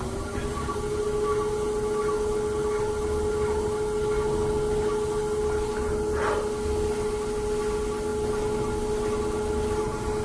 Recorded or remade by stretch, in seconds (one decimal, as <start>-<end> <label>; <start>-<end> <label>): 0.0-10.2 recorded